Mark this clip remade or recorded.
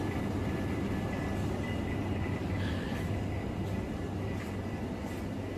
recorded